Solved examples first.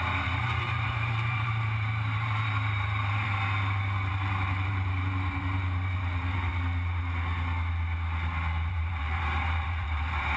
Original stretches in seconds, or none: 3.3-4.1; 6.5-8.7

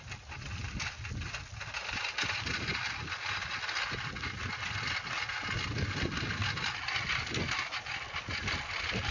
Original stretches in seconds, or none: 0.0-9.1

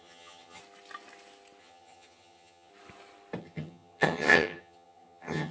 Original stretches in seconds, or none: 0.6-1.6; 2.7-3.4

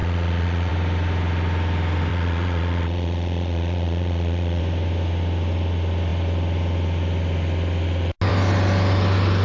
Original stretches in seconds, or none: 0.7-2.1; 4.6-9.4